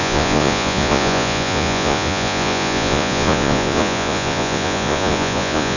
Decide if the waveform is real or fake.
fake